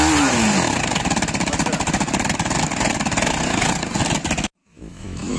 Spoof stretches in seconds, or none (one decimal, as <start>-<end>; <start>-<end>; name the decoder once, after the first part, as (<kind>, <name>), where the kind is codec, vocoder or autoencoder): 4.6-5.4 (autoencoder, DAC-VAE)